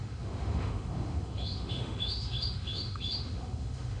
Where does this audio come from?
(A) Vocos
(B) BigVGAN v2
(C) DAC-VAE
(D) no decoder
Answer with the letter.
C